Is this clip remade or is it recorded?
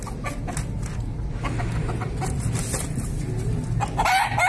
recorded